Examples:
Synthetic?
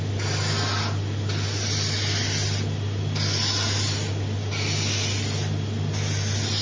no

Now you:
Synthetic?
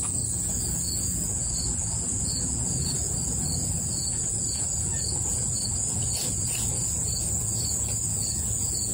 yes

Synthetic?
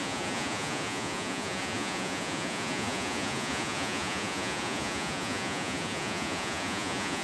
yes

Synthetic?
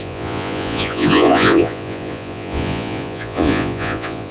yes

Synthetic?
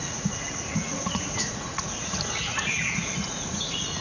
yes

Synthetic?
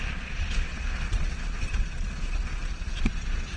yes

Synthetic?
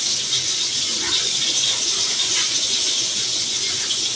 yes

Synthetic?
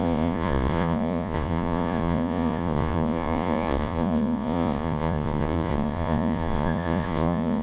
yes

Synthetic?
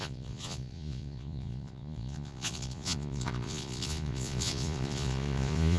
yes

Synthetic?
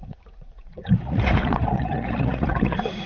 yes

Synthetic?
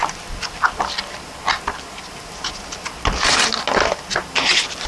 no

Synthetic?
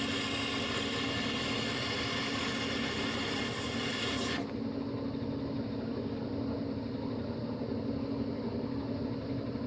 no